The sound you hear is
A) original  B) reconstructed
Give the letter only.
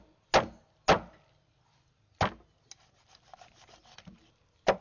A